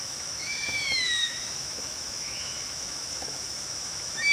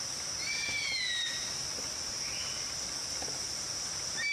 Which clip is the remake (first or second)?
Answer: first